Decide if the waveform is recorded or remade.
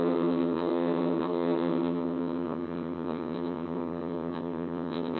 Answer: remade